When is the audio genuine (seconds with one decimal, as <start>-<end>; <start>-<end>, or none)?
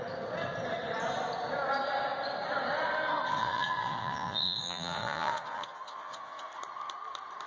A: 0.0-3.4; 6.5-7.5